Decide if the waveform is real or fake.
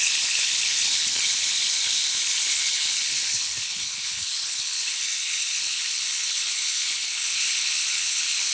fake